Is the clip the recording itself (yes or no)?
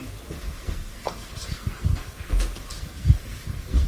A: no